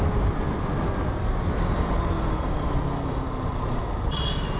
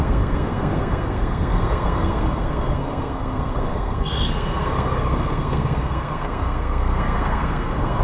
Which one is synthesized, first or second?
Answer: second